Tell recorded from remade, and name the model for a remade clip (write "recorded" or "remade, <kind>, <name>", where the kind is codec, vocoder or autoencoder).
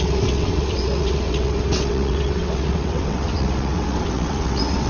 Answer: remade, vocoder, WaveNeXt